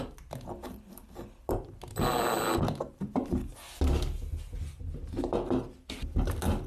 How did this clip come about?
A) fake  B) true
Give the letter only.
B